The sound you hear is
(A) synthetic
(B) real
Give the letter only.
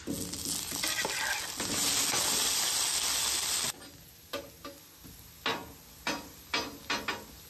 B